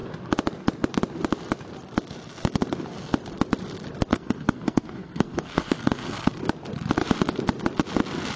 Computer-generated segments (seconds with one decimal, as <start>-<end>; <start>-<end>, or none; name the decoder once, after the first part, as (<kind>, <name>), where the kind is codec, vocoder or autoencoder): 4.1-6.4 (codec, SNAC)